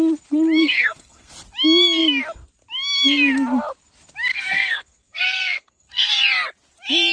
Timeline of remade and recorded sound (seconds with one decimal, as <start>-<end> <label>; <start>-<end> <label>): 0.0-0.6 recorded; 0.6-1.3 remade; 1.3-4.3 recorded; 4.3-6.1 remade; 6.1-7.1 recorded